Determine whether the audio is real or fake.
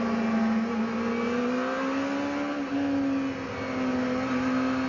real